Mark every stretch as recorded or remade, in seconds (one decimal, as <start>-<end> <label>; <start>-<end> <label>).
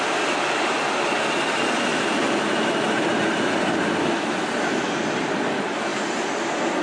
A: 0.0-1.9 recorded; 1.9-3.6 remade; 3.6-6.8 recorded